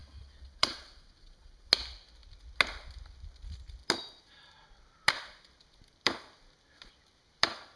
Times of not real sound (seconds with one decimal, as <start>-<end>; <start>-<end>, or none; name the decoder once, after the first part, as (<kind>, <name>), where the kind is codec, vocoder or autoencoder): 0.0-1.7 (vocoder, WaveNeXt)